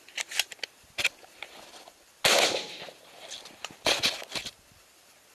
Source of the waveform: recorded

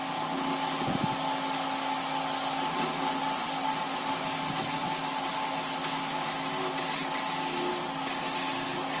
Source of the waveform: recorded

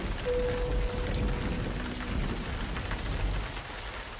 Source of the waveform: recorded